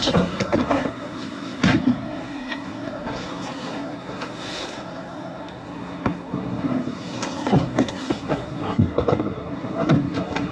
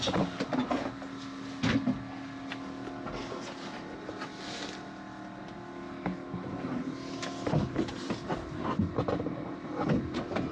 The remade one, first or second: first